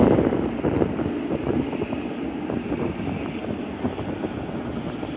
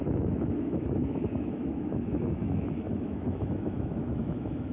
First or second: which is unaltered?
first